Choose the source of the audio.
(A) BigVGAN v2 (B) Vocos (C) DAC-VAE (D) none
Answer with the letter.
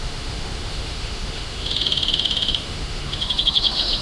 C